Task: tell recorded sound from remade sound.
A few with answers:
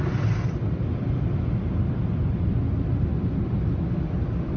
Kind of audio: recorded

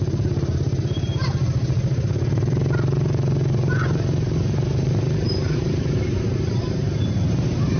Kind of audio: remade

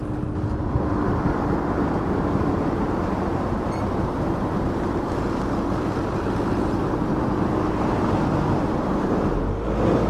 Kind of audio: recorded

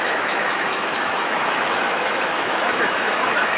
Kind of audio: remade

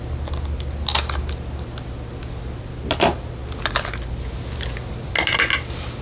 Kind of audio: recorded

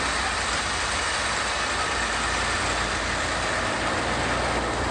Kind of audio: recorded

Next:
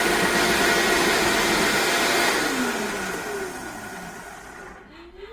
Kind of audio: recorded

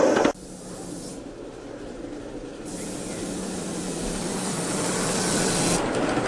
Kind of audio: recorded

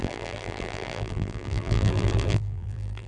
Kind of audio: remade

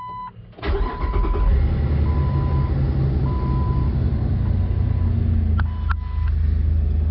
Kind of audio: recorded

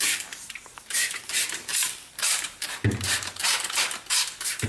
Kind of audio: remade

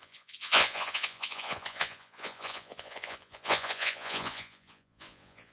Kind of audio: remade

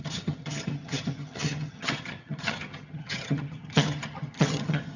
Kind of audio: remade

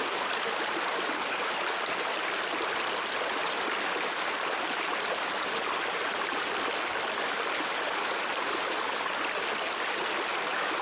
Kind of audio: recorded